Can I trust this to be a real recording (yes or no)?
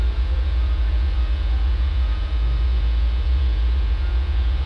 no